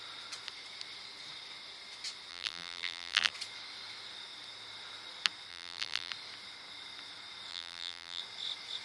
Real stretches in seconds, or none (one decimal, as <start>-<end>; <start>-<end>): 0.0-2.3; 3.3-5.5; 6.1-7.5; 8.2-8.8